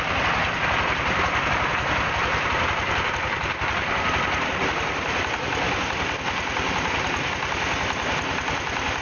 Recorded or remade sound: recorded